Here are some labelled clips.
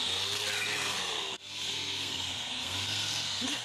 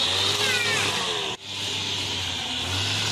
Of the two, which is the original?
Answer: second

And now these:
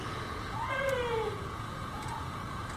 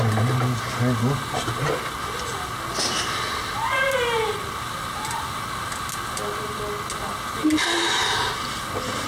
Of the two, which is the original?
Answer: second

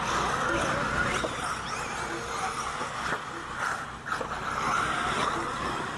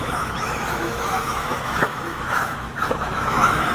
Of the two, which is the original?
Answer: first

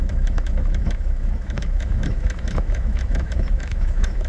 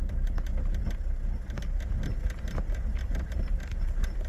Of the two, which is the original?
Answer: second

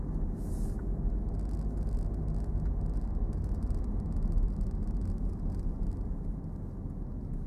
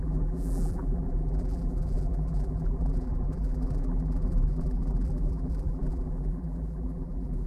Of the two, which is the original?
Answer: first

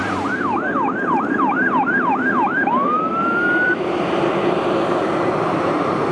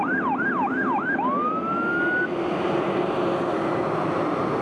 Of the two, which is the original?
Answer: second